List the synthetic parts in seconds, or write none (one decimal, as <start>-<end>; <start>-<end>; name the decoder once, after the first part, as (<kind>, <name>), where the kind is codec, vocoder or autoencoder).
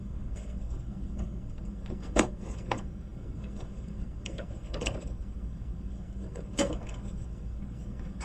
0.0-8.2 (codec, SNAC)